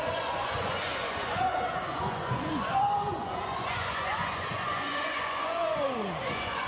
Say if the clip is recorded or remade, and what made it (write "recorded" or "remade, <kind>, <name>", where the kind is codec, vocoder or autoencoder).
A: remade, vocoder, Vocos